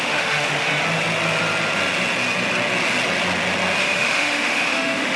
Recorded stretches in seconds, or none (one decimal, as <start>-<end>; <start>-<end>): 0.7-3.8